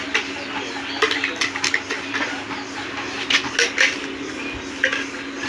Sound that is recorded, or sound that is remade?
recorded